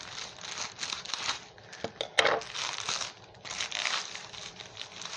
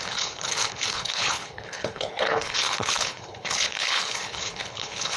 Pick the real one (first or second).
first